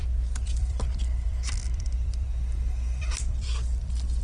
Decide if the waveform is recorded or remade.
remade